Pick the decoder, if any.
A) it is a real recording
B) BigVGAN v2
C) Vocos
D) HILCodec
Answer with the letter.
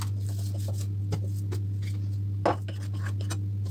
A